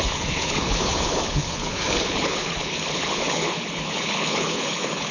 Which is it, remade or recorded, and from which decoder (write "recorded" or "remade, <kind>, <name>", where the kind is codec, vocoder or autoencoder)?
remade, codec, HILCodec